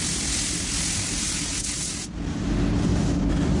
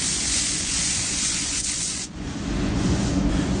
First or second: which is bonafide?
first